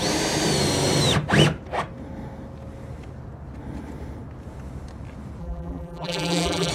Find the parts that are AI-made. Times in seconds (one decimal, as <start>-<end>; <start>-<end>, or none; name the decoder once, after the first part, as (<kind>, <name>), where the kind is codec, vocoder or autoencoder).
5.4-6.7 (vocoder, BigVGAN v2)